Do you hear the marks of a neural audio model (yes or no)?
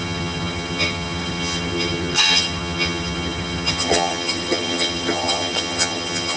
yes